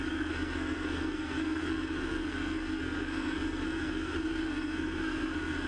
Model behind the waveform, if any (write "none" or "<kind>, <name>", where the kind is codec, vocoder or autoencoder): codec, SNAC